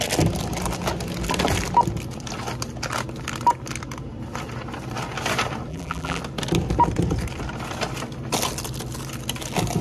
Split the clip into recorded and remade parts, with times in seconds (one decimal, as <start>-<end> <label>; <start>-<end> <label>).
0.0-5.7 recorded; 5.7-6.2 remade; 6.2-9.8 recorded